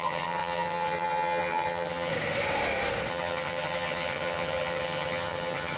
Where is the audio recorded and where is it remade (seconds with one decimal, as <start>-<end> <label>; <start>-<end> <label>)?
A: 0.0-2.1 remade; 2.1-3.1 recorded; 3.1-5.8 remade